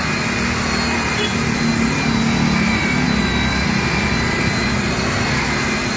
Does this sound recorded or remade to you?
recorded